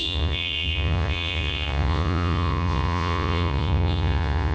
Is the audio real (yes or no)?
no